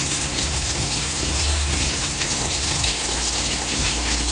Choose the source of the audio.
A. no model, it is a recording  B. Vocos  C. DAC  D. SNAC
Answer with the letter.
D